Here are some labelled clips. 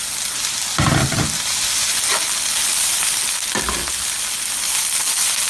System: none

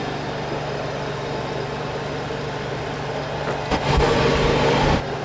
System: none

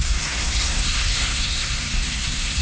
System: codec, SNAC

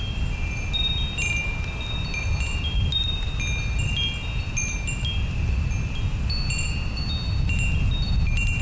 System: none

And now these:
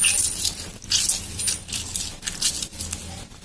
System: none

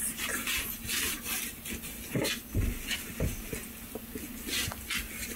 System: none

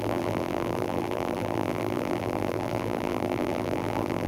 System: vocoder, BigVGAN v2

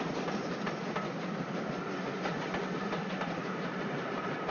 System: none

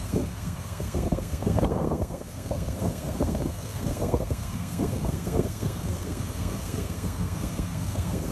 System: codec, SNAC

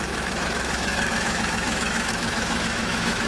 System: autoencoder, DAC-VAE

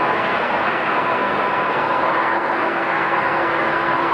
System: codec, SNAC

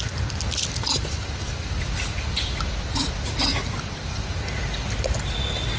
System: none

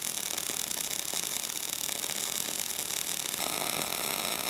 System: none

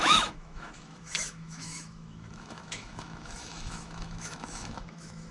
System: autoencoder, DAC-VAE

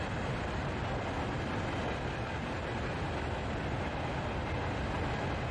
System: none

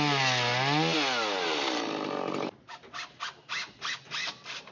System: none